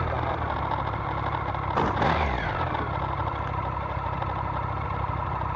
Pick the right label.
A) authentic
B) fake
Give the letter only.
A